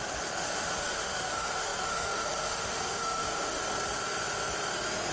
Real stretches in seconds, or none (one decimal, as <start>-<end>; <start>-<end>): 3.6-5.1